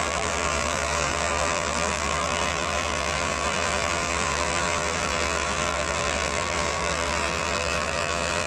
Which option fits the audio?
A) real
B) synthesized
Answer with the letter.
B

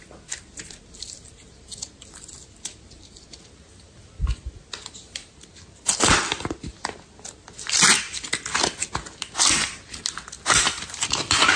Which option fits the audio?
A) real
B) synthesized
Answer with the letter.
A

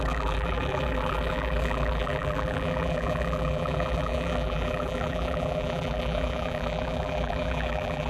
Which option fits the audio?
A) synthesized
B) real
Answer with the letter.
A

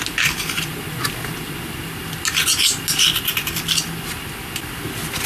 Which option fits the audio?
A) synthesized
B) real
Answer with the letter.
B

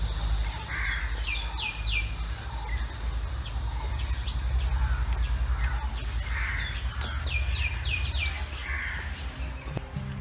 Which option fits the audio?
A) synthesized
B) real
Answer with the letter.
B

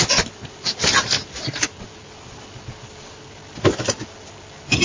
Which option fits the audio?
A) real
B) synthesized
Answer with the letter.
A